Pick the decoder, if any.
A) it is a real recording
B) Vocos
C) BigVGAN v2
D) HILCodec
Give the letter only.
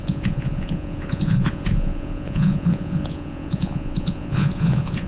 B